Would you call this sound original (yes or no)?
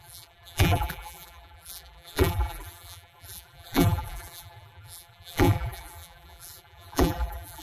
no